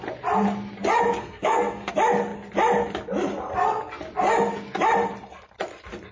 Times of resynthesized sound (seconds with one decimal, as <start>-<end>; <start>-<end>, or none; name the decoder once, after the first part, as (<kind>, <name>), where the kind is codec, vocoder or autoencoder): 1.2-1.9 (codec, SNAC)